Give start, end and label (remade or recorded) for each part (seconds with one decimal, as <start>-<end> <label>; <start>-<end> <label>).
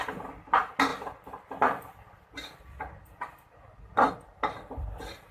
0.0-5.3 recorded